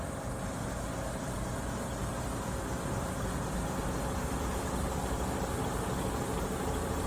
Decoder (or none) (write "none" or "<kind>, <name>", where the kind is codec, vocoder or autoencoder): none